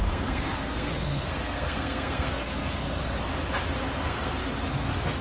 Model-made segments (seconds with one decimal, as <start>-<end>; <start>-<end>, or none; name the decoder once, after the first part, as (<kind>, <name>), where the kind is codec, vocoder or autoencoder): 0.0-3.3 (codec, SNAC); 4.0-4.4